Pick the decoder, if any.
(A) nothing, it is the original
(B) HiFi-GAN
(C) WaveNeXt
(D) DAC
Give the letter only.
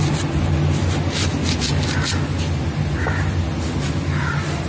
A